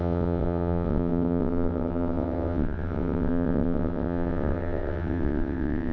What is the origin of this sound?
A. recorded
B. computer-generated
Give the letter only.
B